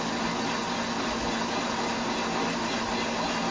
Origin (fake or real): real